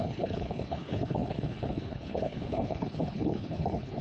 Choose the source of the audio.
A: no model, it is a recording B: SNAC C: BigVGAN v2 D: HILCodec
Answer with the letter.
D